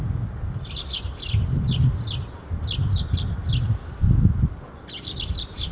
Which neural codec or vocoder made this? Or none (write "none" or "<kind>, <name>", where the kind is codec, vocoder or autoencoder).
none